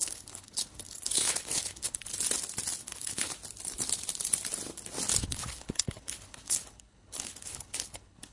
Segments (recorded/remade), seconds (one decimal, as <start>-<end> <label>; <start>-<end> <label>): 0.0-2.1 remade; 2.1-2.8 recorded; 2.8-3.3 remade; 3.3-5.2 recorded; 5.2-8.3 remade